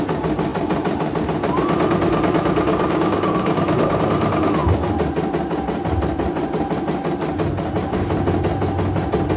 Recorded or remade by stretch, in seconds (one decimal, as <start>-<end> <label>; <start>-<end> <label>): 0.0-2.7 recorded; 2.7-4.0 remade; 4.0-9.4 recorded